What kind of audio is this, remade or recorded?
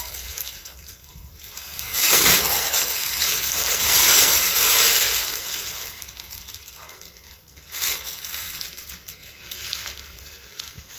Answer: remade